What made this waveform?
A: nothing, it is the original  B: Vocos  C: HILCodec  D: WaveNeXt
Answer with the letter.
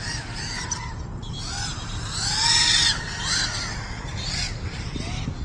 A